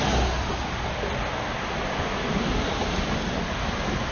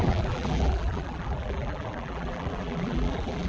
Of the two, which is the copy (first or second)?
second